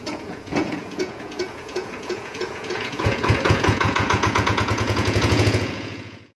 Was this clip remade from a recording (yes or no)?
yes